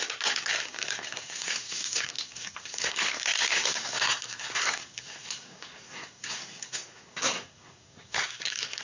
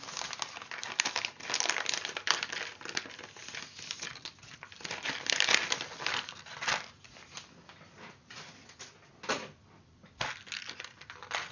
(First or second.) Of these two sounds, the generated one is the first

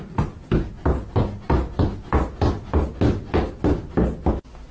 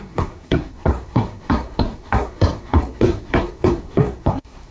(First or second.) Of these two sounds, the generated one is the second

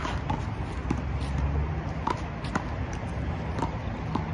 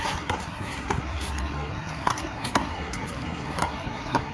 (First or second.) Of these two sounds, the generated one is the second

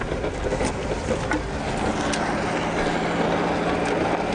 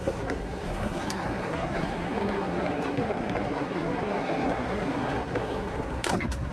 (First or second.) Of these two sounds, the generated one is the second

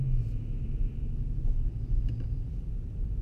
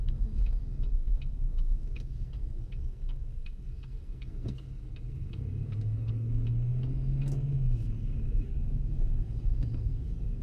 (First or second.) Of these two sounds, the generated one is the second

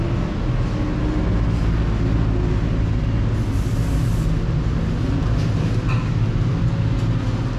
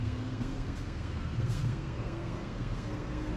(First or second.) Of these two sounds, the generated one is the second